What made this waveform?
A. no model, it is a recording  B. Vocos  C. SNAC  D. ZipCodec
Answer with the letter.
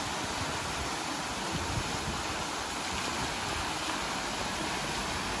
A